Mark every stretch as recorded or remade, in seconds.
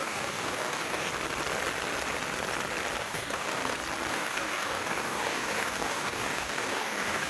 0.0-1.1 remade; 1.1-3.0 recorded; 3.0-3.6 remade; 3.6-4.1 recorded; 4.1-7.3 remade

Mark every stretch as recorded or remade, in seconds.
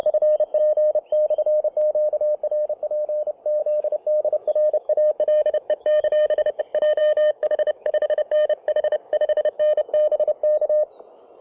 0.0-3.6 recorded; 3.6-6.6 remade; 6.6-7.0 recorded; 7.0-9.6 remade; 9.6-11.4 recorded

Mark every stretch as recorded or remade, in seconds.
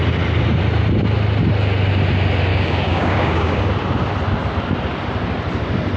0.0-2.5 recorded; 2.5-3.6 remade; 3.6-6.0 recorded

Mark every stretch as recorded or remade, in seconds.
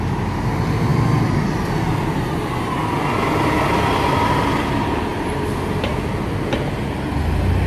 0.0-7.7 recorded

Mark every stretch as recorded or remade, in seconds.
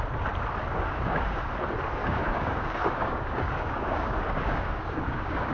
0.0-0.7 recorded; 0.7-1.4 remade; 1.4-2.0 recorded; 2.0-5.5 remade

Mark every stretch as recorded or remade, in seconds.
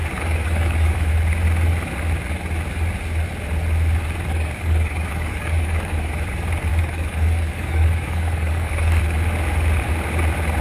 0.0-1.1 remade; 1.1-4.3 recorded; 4.3-6.1 remade; 6.1-6.7 recorded; 6.7-9.0 remade; 9.0-10.6 recorded